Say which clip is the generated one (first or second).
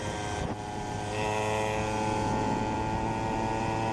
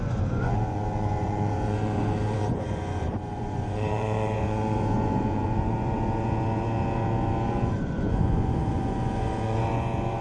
second